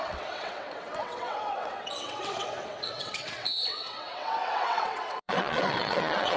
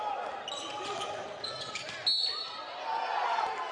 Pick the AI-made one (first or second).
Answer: first